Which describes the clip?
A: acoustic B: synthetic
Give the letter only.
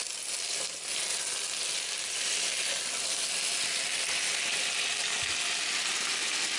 A